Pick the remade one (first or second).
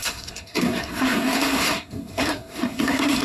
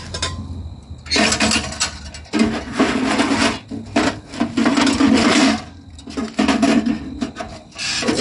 first